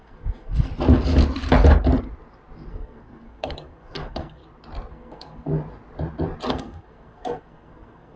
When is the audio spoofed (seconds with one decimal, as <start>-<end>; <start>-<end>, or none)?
0.0-0.7; 2.7-4.4; 4.9-5.5; 6.5-8.2

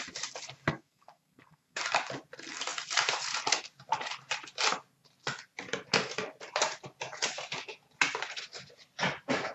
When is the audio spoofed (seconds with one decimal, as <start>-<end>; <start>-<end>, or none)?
0.7-1.8

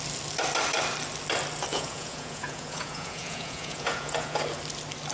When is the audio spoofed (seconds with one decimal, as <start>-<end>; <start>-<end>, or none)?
1.7-4.4